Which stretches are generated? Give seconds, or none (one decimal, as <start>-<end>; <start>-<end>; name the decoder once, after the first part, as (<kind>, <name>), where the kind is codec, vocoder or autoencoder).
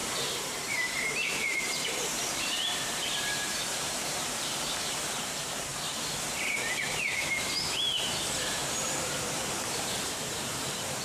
0.0-5.7 (vocoder, BigVGAN v2); 8.1-11.0